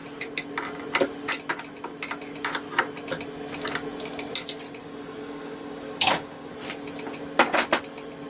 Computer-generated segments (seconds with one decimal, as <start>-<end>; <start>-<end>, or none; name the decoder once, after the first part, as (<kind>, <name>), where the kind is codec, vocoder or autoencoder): 4.8-6.5 (codec, DAC)